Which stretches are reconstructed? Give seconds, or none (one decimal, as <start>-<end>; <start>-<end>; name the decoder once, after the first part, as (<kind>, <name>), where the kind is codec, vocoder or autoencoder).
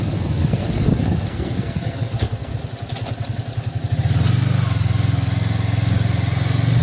0.0-2.5 (codec, SNAC)